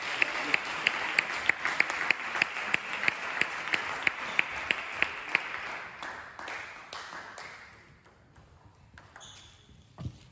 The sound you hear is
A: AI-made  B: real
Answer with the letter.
B